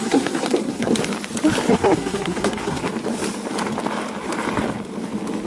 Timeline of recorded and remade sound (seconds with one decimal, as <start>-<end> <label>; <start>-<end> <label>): 0.0-0.9 remade; 0.9-1.7 recorded; 1.7-2.8 remade; 2.8-5.5 recorded